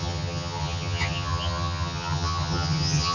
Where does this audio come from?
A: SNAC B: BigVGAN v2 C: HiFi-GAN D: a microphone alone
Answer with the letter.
C